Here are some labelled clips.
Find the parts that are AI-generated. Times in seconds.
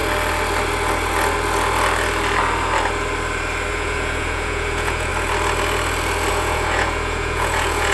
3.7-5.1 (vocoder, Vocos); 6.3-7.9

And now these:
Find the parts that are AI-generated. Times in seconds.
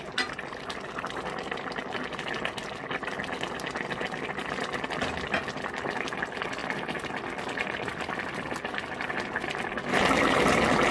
none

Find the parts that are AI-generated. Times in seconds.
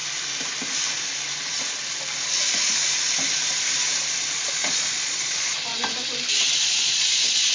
4.5-5.7 (vocoder, Vocos); 6.6-7.5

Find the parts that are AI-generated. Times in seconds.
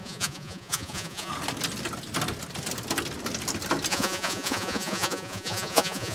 0.0-1.3 (vocoder, Vocos); 3.9-6.1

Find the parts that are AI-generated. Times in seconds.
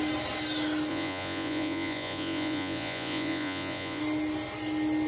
0.9-4.0 (vocoder, Vocos)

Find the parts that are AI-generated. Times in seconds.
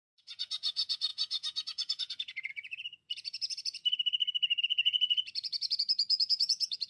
0.0-3.8 (vocoder, Vocos); 4.6-6.9